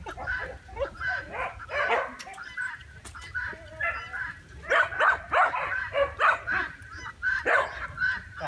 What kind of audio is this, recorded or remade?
recorded